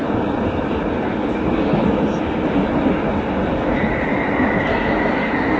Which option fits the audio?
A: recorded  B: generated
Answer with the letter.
A